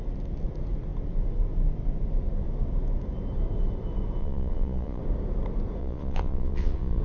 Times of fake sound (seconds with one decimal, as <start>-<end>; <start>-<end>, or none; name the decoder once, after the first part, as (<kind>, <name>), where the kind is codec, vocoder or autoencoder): 4.2-5.0 (vocoder, Vocos); 5.8-7.0